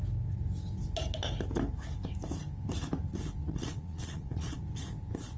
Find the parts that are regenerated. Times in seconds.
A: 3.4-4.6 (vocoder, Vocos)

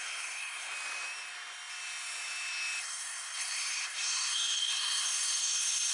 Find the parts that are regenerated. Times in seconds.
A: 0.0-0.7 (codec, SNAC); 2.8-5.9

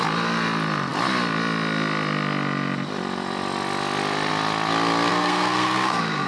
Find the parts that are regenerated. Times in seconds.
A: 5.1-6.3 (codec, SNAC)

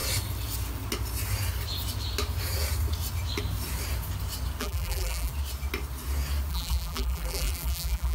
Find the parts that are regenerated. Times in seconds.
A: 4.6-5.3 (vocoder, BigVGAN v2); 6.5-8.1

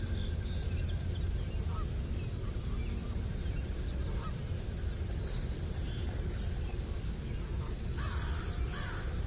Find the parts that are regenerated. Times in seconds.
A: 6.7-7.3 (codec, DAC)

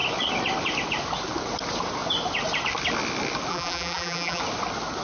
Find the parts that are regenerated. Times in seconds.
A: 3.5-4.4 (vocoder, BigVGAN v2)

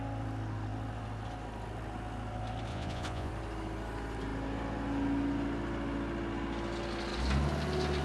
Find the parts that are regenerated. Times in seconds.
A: 2.7-3.3 (vocoder, Vocos)